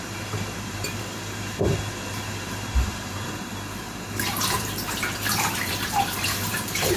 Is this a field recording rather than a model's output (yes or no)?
no